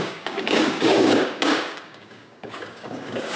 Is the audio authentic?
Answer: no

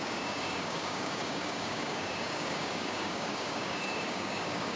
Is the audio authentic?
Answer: no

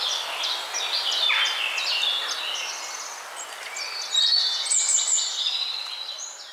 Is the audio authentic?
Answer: yes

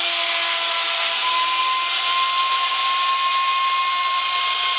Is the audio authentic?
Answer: yes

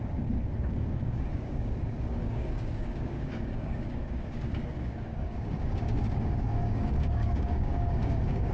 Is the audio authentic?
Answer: no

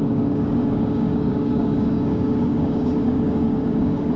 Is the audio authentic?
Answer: no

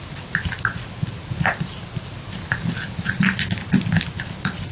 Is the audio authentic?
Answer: yes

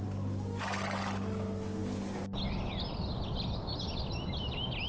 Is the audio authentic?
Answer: yes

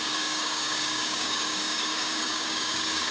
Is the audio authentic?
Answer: no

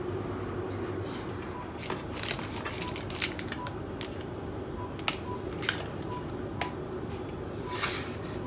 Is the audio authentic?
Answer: yes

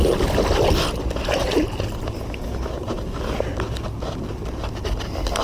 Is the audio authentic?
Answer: yes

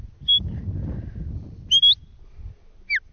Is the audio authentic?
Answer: yes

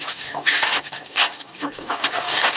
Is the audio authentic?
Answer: no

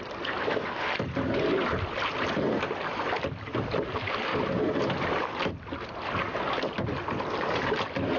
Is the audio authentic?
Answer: yes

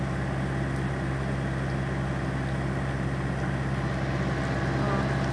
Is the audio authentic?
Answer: yes